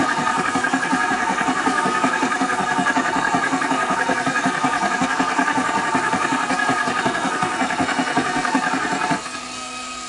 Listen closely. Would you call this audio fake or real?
fake